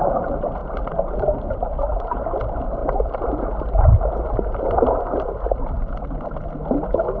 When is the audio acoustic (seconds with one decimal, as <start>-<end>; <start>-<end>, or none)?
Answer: 0.0-7.2